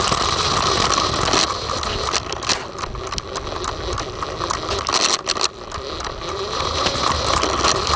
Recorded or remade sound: recorded